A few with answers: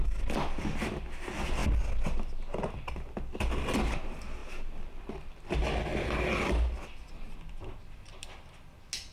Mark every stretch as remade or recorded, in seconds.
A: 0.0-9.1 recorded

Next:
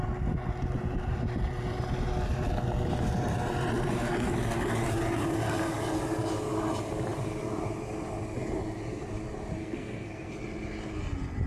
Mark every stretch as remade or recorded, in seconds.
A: 0.0-9.6 recorded; 9.6-10.3 remade; 10.3-11.5 recorded